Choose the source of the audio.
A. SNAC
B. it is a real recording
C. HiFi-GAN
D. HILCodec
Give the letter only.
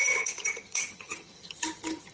C